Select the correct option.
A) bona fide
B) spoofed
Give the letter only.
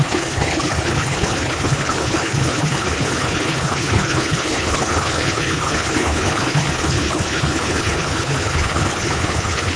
B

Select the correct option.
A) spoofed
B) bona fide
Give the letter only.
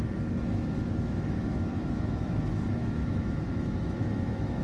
A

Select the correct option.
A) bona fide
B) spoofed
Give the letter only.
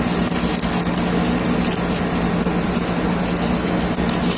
A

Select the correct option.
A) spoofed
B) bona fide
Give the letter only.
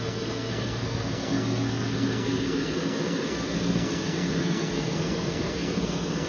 A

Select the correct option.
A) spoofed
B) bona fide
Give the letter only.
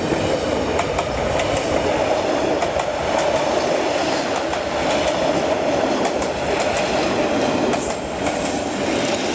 B